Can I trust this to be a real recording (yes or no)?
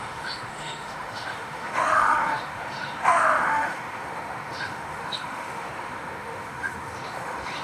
no